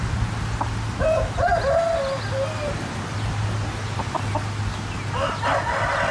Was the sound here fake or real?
real